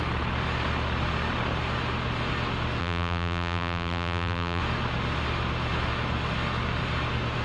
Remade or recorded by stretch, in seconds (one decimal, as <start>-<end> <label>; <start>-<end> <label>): 0.0-2.8 recorded; 2.8-4.6 remade; 4.6-7.4 recorded